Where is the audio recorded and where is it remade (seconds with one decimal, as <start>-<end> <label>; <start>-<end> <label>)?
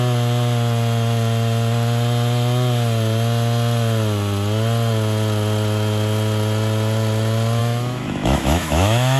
0.0-7.6 recorded; 7.6-9.2 remade